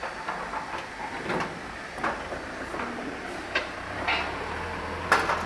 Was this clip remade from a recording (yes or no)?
no